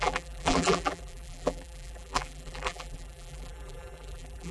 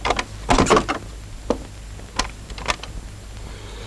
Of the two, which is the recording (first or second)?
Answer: second